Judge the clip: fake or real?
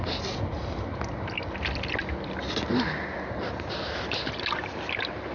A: real